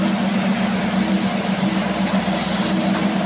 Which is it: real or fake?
real